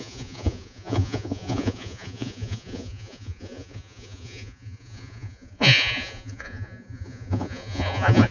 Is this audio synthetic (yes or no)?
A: yes